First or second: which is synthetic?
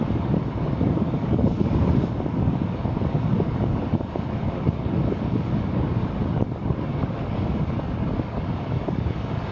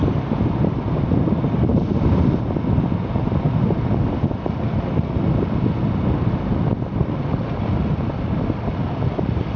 first